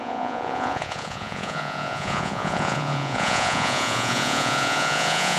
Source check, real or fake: fake